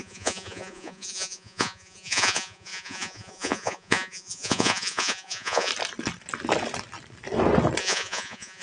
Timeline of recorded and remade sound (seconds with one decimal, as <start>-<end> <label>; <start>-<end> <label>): 0.0-5.7 remade; 5.7-7.8 recorded; 7.8-8.6 remade